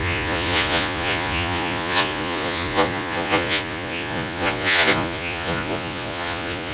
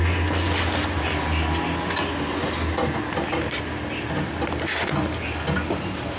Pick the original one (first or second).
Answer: second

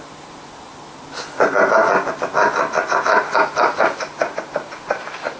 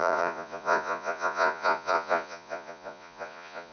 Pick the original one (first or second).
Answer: first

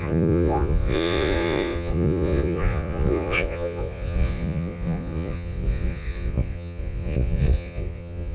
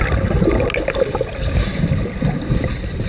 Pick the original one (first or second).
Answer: second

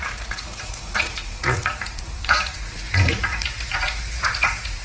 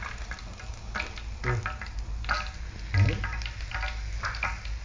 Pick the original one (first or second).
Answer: second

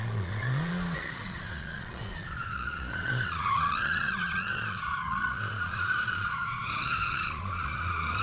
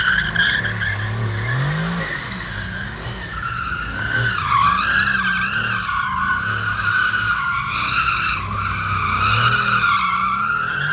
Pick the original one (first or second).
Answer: second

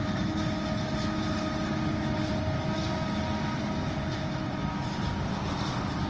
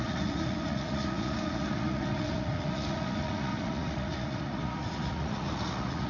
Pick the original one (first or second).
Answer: first